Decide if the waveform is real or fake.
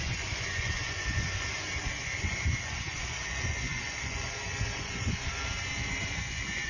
fake